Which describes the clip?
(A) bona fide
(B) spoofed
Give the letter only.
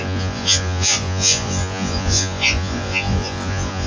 B